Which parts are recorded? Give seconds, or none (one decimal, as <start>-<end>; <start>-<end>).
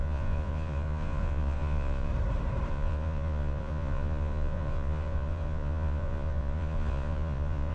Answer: 2.1-2.7